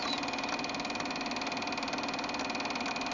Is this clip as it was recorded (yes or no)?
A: yes